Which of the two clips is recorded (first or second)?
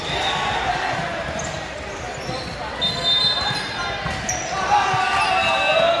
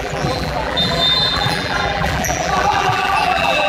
first